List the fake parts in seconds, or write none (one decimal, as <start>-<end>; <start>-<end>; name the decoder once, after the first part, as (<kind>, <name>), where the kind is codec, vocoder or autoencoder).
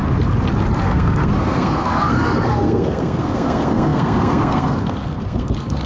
0.8-5.9 (codec, SNAC)